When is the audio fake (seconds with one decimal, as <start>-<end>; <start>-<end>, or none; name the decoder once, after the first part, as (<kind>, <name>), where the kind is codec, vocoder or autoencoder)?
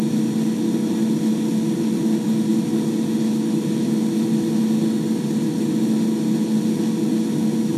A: none